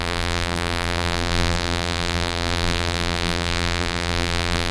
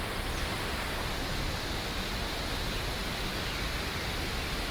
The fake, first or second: first